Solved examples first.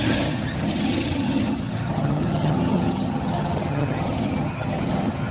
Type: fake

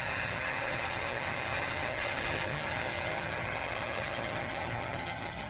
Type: fake